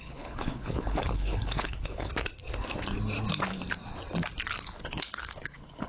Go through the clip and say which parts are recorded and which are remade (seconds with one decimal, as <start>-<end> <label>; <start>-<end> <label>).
0.0-2.1 remade; 2.1-4.6 recorded; 4.6-5.9 remade